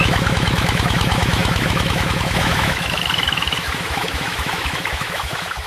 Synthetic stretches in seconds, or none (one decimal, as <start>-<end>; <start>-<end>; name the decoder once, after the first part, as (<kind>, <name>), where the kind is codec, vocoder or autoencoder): 0.0-5.7 (autoencoder, DAC-VAE)